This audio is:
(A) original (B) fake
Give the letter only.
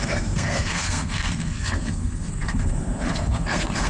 B